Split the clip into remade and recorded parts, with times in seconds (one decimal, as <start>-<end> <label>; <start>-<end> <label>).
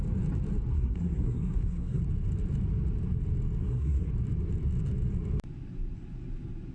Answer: 0.0-0.7 recorded; 0.7-2.0 remade; 2.0-3.6 recorded; 3.6-4.1 remade; 4.1-6.7 recorded